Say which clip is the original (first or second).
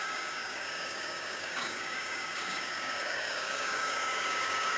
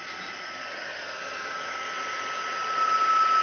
second